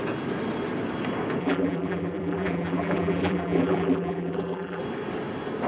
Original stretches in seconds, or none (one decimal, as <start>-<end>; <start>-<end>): 0.0-1.4; 4.8-5.7